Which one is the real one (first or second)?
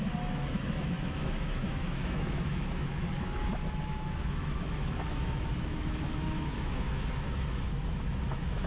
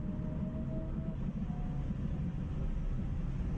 second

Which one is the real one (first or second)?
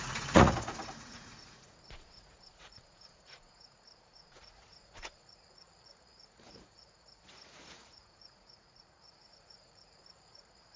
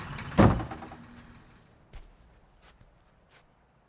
second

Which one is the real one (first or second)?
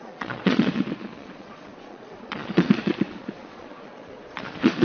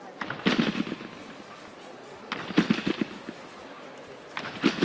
second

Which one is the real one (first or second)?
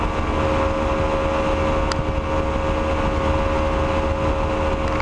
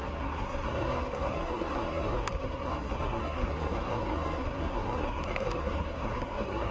first